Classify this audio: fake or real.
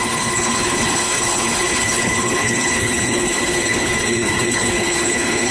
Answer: fake